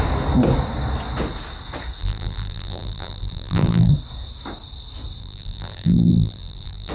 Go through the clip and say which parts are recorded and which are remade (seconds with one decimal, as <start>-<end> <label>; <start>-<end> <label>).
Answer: 0.0-2.0 recorded; 2.0-3.9 remade; 3.9-5.2 recorded; 5.2-6.9 remade